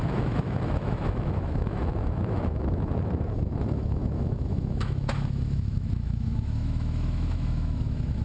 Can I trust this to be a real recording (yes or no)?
no